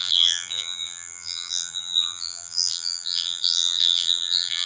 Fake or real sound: fake